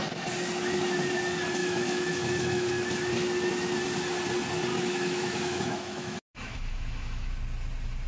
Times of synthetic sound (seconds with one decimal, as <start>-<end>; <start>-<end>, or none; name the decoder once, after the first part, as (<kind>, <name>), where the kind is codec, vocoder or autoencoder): 1.6-2.7 (autoencoder, DAC-VAE); 4.7-7.3